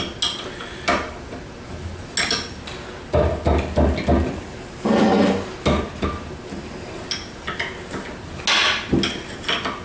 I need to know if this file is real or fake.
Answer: real